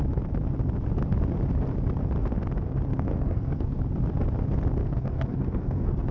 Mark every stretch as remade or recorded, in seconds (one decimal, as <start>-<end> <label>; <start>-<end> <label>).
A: 0.0-2.9 recorded; 2.9-3.8 remade; 3.8-4.8 recorded; 4.8-6.1 remade